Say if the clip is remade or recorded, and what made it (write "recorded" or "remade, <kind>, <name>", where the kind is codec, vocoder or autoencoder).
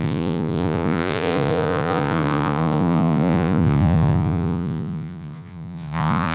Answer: remade, vocoder, Vocos